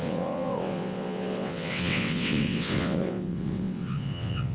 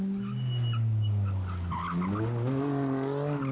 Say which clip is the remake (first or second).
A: first